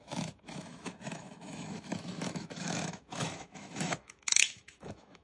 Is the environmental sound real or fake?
fake